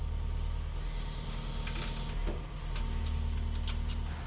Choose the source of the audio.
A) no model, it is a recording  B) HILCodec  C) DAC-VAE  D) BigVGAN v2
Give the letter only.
A